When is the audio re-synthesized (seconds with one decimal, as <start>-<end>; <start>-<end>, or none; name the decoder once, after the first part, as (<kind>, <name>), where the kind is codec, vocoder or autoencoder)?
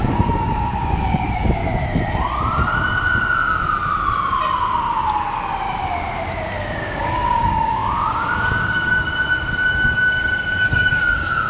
0.0-1.6 (codec, DAC); 6.7-9.1; 9.7-11.5